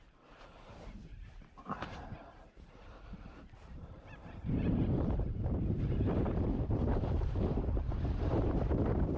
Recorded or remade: remade